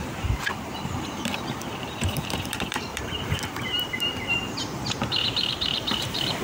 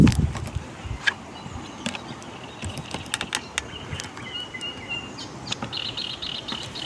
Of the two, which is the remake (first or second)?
first